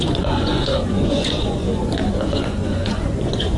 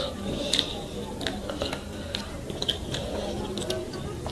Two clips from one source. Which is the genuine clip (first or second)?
second